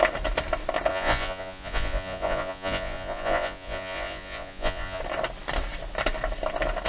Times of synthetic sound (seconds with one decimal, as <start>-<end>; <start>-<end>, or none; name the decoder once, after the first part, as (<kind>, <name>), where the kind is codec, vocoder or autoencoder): 0.9-5.0 (vocoder, Vocos)

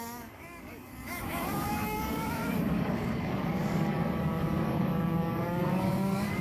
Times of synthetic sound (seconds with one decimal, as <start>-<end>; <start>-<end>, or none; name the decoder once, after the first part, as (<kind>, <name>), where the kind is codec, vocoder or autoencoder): 0.0-6.4 (codec, DAC)

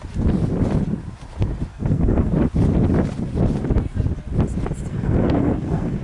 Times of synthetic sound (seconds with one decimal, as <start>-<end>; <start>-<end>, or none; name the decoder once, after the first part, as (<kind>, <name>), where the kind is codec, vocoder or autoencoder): 1.7-2.3 (codec, SNAC); 4.9-6.0

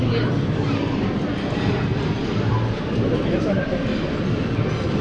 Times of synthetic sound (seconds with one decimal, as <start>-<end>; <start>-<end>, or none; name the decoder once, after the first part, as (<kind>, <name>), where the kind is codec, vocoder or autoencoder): none

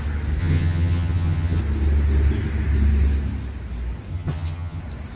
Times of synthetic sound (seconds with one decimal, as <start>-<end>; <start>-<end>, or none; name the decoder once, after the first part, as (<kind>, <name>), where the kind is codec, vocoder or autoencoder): 0.4-1.6 (vocoder, HiFi-GAN); 4.1-4.8

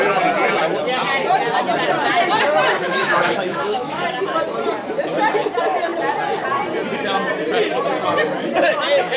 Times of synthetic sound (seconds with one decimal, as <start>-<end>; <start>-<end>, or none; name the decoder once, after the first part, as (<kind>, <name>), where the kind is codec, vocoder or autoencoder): 2.8-4.0 (autoencoder, DAC-VAE)

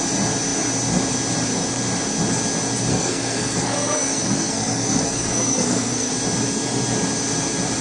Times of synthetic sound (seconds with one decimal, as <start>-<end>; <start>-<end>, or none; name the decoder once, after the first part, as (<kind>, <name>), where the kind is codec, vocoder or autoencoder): 2.9-6.1 (codec, SNAC)

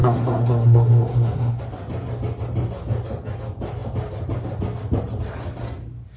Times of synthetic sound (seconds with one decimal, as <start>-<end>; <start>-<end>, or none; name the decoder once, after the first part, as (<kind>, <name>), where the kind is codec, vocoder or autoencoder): 0.0-1.6 (codec, SNAC)